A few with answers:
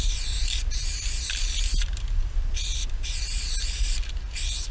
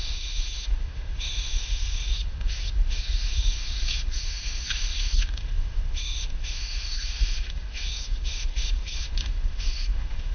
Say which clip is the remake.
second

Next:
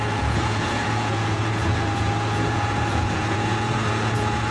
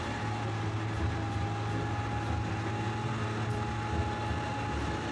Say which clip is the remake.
first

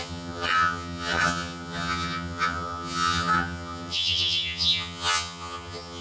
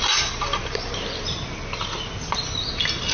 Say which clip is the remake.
first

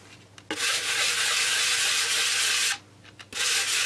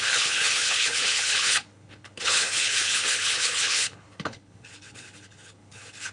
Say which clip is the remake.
second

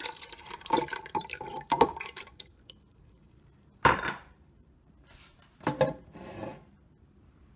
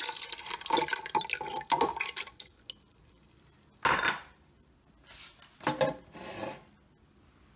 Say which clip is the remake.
first